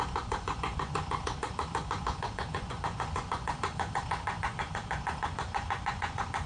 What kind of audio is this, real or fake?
fake